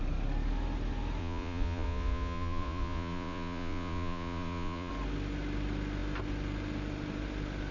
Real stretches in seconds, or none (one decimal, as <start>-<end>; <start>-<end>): 0.0-1.2; 4.9-7.7